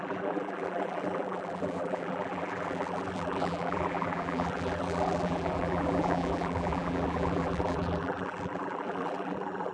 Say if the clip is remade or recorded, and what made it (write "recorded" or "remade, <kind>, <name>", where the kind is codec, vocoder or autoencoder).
remade, vocoder, BigVGAN v2